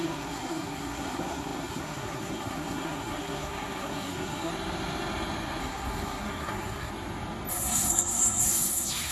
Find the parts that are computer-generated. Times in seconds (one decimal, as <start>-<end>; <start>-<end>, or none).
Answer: 0.0-4.5; 5.6-6.9; 7.5-9.1